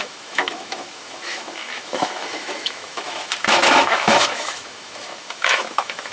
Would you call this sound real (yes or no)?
no